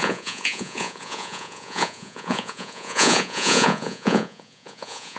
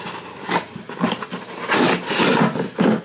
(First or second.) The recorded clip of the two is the second